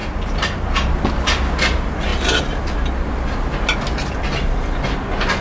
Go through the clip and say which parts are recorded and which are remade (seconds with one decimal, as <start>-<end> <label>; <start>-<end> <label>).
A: 0.0-5.4 recorded